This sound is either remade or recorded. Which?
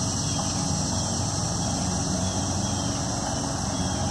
recorded